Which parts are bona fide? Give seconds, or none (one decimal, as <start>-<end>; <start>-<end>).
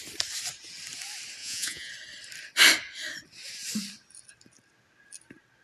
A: 0.0-1.4; 1.9-5.6